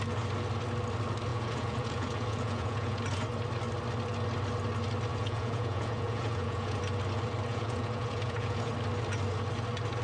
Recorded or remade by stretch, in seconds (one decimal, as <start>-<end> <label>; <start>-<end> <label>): 0.0-1.3 recorded; 1.3-3.0 remade; 3.0-5.1 recorded; 5.1-6.8 remade; 6.8-7.5 recorded; 7.5-8.7 remade; 8.7-10.0 recorded